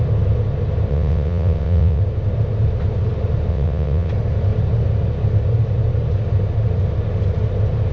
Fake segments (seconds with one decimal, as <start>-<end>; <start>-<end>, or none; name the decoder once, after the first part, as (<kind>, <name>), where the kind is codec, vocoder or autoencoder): 0.9-2.0 (vocoder, WaveNeXt); 3.5-4.1